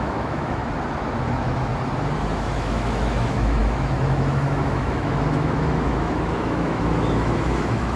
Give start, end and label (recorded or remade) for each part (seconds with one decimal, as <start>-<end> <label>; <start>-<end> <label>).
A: 0.0-0.6 remade; 0.6-1.2 recorded; 1.2-1.7 remade; 1.7-2.3 recorded; 2.3-8.0 remade